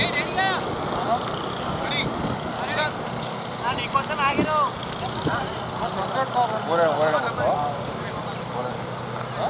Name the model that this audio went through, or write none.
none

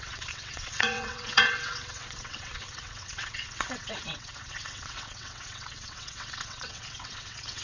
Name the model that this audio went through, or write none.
vocoder, WaveNeXt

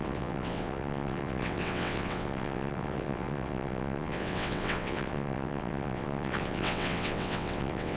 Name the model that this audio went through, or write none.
vocoder, WaveNeXt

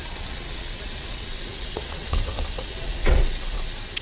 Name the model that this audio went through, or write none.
vocoder, WaveNeXt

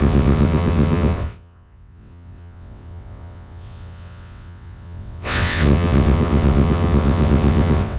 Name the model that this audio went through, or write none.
vocoder, WaveNeXt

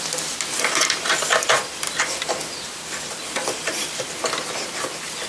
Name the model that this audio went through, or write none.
none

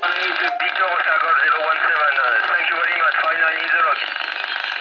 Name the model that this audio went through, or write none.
none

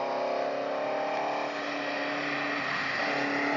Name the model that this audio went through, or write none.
none